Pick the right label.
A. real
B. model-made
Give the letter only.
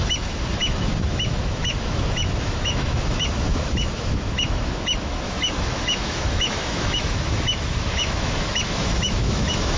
B